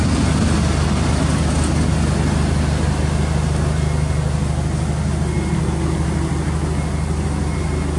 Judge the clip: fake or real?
real